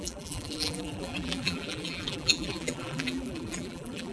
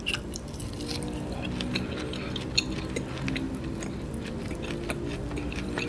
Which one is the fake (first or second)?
first